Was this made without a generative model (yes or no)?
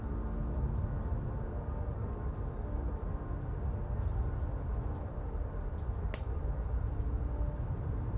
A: yes